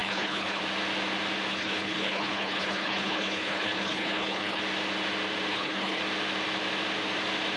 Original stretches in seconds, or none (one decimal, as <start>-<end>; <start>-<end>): 0.6-1.5; 4.6-5.5; 6.0-7.6